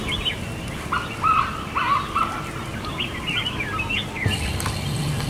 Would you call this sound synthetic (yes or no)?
no